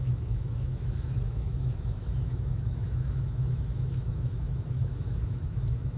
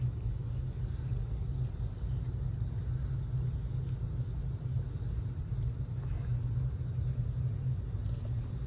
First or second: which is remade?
first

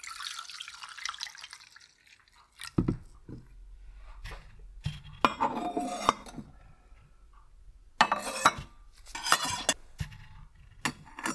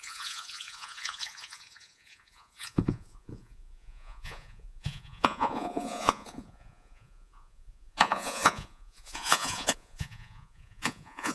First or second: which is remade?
second